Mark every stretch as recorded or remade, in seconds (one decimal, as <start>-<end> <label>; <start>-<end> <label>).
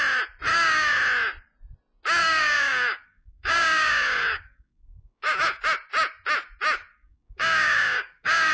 0.0-0.5 recorded; 0.5-1.0 remade; 1.0-2.2 recorded; 2.2-5.6 remade; 5.6-6.9 recorded; 6.9-8.5 remade